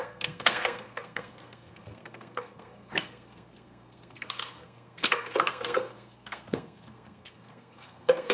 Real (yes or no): no